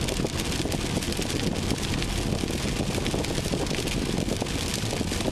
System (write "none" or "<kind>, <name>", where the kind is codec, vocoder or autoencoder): none